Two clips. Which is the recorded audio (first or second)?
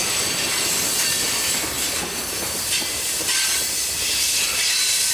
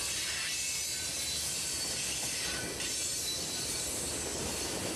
second